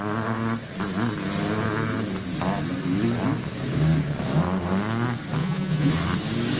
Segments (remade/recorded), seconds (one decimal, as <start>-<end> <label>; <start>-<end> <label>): 0.0-5.4 recorded; 5.4-5.9 remade; 5.9-6.6 recorded